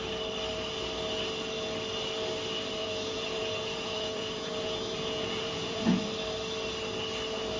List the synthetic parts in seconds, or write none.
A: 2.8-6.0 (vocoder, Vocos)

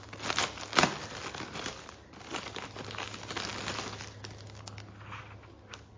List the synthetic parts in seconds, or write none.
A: none

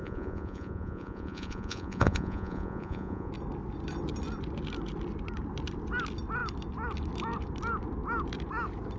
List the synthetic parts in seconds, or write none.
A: 0.0-3.3 (vocoder, Vocos)

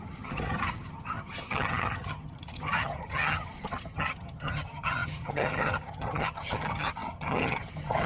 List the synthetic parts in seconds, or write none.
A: 0.0-8.1 (vocoder, HiFi-GAN)

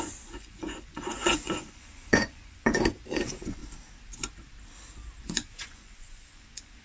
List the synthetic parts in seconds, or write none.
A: 0.0-3.6 (vocoder, Vocos); 5.2-6.8

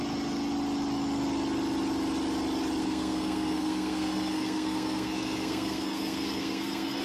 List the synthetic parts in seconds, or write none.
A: 2.8-7.0 (codec, SNAC)